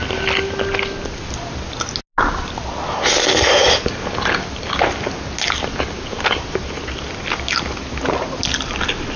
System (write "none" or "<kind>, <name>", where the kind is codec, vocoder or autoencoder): none